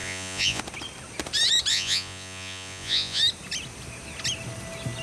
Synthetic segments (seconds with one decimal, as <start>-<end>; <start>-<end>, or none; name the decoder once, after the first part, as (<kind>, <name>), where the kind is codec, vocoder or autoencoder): 0.0-0.6 (vocoder, Vocos); 1.7-3.2